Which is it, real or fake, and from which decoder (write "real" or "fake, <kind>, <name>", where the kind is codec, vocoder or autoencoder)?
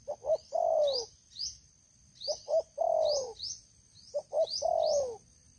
real